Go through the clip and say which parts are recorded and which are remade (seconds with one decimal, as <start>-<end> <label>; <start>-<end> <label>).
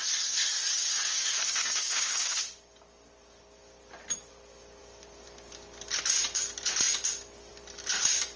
0.0-0.8 recorded; 0.8-2.4 remade; 2.4-8.4 recorded